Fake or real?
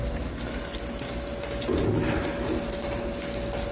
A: real